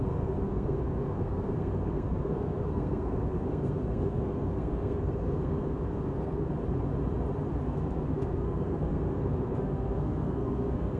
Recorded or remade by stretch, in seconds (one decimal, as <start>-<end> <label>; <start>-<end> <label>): 0.0-6.5 remade; 6.5-7.6 recorded; 7.6-11.0 remade